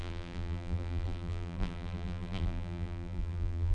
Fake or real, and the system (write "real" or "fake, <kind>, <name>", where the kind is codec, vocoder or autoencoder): fake, vocoder, BigVGAN v2